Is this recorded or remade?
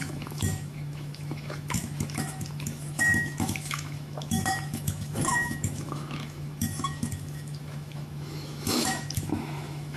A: remade